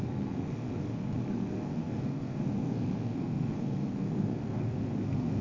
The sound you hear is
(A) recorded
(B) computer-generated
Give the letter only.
B